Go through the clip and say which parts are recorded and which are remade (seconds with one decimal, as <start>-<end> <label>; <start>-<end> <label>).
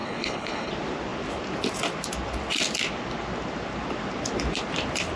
0.0-0.7 remade; 0.7-5.2 recorded